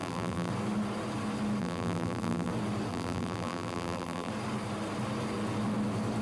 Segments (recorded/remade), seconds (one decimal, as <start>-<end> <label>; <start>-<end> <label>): 0.0-0.5 remade; 0.5-1.6 recorded; 1.6-2.5 remade; 2.5-2.9 recorded; 2.9-4.3 remade; 4.3-6.2 recorded

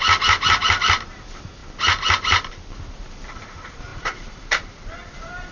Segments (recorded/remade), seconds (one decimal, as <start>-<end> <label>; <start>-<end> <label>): 0.0-5.5 recorded

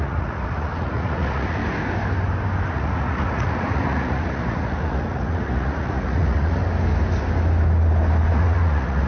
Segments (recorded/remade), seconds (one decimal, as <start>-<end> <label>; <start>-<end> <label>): 0.0-1.6 remade; 1.6-2.7 recorded; 2.7-6.6 remade; 6.6-8.3 recorded; 8.3-9.1 remade